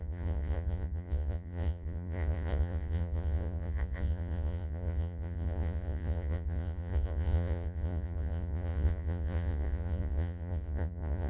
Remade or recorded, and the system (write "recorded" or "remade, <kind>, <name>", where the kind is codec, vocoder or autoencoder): remade, vocoder, Vocos